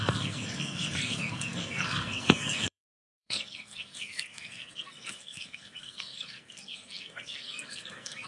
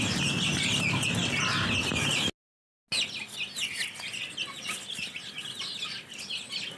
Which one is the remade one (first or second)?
first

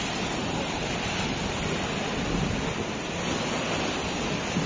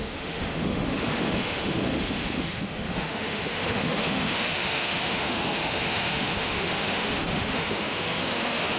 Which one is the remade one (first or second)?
second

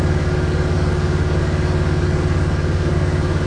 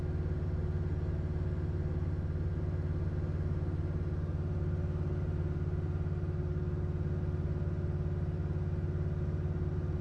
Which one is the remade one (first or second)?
first